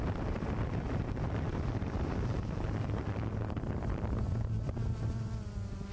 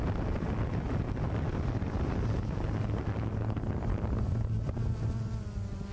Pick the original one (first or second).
second